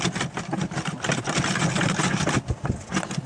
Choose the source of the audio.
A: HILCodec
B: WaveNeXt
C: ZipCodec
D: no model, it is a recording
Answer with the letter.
D